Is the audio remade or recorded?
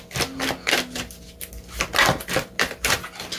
recorded